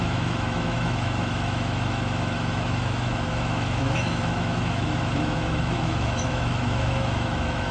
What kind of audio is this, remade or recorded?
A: remade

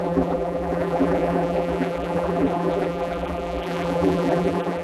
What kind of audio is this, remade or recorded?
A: remade